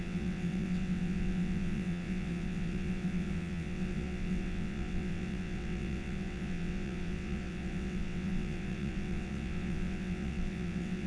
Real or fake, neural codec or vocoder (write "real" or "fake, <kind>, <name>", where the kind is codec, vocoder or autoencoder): fake, vocoder, WaveNeXt